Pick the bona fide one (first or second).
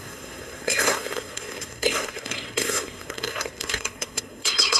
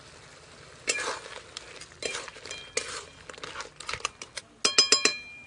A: second